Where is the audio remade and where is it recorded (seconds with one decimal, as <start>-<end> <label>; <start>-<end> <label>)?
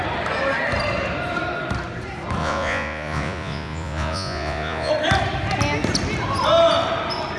0.0-2.4 recorded; 2.4-4.9 remade; 4.9-7.4 recorded